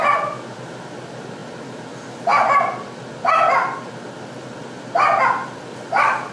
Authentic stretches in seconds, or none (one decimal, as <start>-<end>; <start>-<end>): 0.0-6.3